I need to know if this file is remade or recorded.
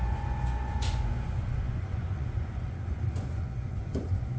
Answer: remade